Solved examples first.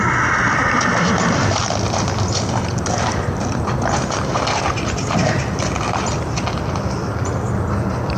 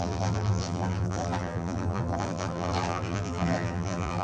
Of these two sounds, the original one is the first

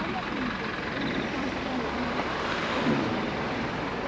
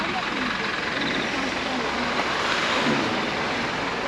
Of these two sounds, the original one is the second